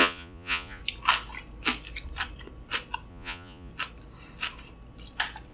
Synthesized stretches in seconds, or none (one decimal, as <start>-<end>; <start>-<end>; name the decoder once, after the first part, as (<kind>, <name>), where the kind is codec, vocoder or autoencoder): 0.0-0.8 (vocoder, Vocos); 3.1-3.7